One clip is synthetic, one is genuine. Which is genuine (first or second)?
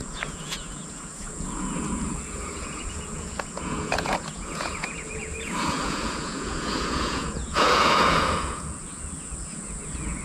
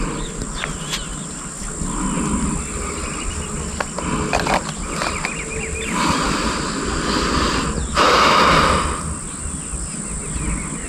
second